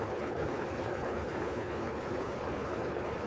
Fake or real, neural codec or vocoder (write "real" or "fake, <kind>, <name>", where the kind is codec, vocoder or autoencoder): fake, codec, HILCodec